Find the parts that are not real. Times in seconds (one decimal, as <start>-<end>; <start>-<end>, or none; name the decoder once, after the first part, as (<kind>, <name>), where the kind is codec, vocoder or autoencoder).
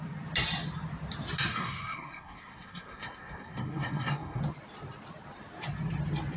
1.5-4.4 (codec, SNAC)